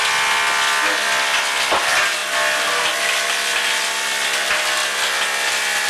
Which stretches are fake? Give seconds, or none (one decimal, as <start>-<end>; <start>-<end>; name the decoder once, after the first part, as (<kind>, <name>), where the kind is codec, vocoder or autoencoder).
none